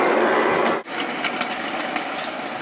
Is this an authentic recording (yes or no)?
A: yes